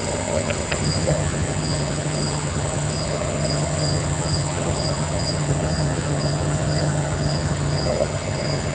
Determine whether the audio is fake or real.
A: fake